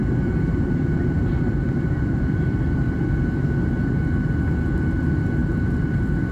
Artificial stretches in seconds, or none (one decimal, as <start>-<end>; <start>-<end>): 0.0-3.7; 5.4-6.3